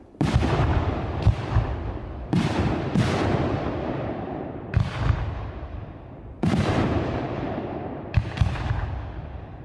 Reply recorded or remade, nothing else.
remade